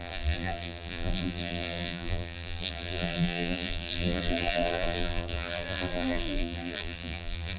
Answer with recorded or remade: remade